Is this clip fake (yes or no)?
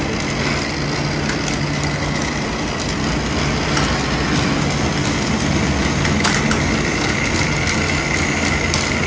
no